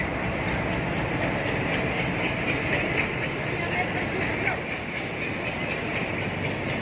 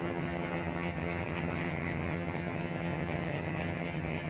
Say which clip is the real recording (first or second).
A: first